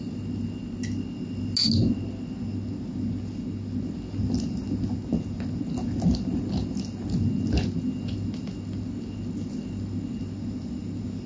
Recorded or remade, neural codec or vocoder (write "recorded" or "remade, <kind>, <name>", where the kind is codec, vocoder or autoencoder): recorded